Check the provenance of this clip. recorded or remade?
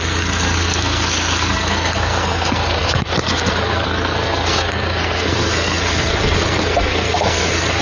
remade